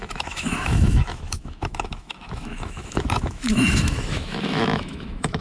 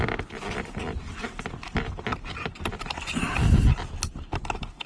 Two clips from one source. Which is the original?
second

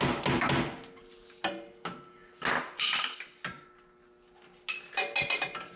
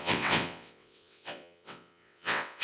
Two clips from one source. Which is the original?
first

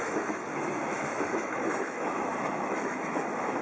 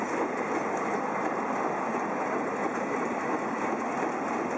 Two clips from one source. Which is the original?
second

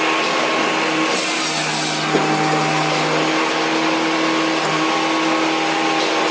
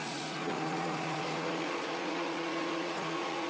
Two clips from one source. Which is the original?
first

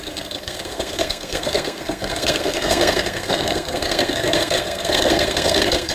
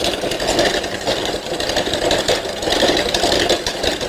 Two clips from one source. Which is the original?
second